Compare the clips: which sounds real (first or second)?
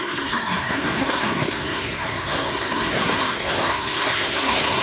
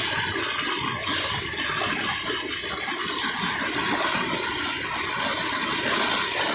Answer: second